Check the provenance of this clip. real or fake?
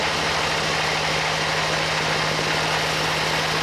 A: real